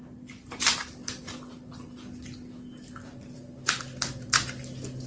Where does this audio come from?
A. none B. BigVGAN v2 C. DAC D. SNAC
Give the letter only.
A